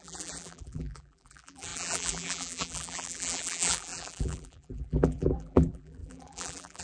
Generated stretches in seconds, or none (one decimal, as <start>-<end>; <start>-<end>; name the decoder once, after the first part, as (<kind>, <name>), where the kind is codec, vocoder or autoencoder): 0.0-6.8 (vocoder, BigVGAN v2)